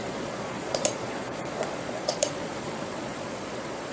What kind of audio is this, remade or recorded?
remade